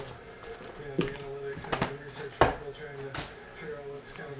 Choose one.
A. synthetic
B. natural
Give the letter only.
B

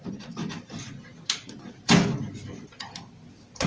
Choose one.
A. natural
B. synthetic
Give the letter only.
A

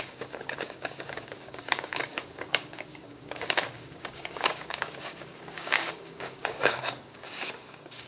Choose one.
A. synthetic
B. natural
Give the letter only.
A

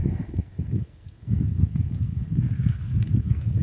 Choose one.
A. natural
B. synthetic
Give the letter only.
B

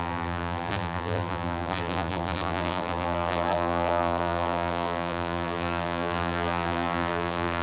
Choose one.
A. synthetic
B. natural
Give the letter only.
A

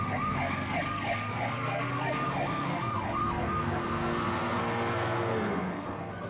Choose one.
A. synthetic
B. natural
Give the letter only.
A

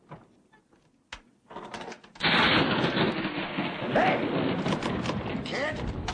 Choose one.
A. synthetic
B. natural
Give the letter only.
B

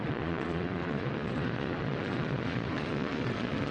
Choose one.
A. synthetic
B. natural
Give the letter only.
A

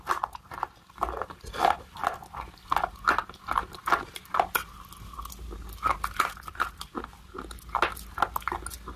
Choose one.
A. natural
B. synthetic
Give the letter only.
A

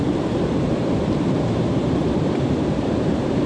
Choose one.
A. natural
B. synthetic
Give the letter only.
B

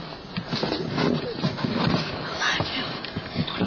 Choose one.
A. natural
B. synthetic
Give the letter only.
B